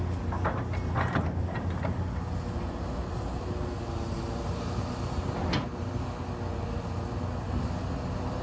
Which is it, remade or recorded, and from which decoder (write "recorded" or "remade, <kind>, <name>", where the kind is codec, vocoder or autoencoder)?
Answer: recorded